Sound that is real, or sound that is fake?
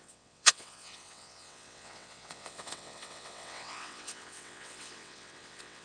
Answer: fake